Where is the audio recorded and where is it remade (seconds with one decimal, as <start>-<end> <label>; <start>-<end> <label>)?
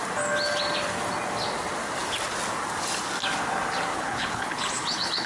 0.0-3.9 recorded; 3.9-5.3 remade